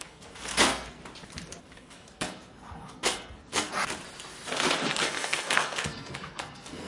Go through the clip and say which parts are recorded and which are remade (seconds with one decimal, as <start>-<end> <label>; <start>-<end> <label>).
0.0-1.0 remade; 1.0-1.6 recorded; 1.6-3.8 remade; 3.8-4.8 recorded; 4.8-6.9 remade